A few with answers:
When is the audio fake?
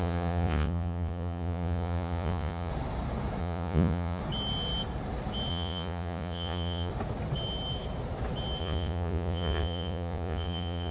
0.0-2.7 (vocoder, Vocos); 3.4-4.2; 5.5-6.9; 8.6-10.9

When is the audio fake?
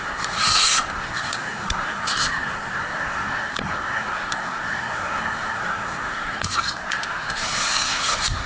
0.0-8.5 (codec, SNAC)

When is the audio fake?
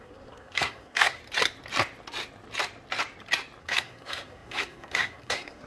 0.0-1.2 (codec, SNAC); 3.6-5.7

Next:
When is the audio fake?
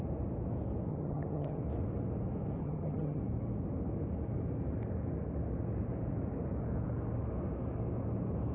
0.9-1.6 (vocoder, HiFi-GAN); 2.6-3.2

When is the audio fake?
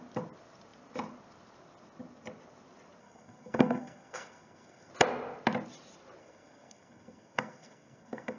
3.0-4.9 (codec, SNAC); 6.2-8.4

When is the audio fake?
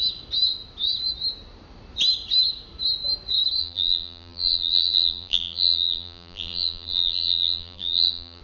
3.6-8.4 (vocoder, BigVGAN v2)